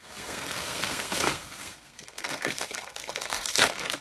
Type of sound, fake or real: fake